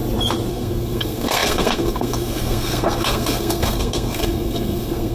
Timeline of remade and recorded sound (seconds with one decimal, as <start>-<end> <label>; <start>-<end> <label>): 0.0-0.5 recorded; 0.5-5.1 remade